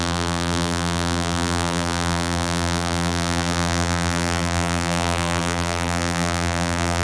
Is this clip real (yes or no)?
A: no